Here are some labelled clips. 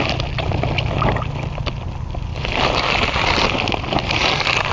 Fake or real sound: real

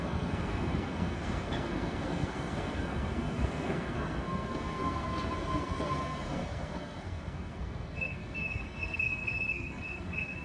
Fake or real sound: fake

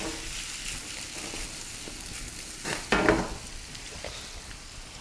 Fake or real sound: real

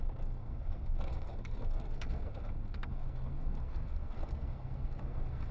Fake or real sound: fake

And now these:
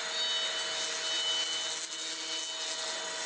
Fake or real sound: real